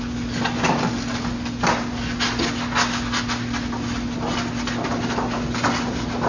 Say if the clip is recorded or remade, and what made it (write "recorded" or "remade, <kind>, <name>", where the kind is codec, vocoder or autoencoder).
recorded